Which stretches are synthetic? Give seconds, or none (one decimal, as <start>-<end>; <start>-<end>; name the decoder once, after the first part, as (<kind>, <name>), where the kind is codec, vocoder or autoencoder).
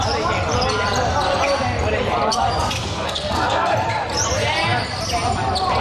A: 2.8-3.7 (codec, SNAC)